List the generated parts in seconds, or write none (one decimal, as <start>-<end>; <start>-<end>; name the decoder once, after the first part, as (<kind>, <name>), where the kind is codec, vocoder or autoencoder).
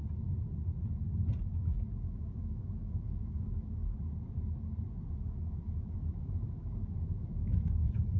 1.4-3.8 (autoencoder, DAC-VAE); 5.1-8.2